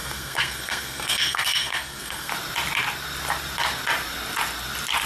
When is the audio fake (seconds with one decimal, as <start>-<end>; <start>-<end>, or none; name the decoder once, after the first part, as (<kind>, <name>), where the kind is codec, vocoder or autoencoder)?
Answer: 0.0-2.3 (codec, SNAC)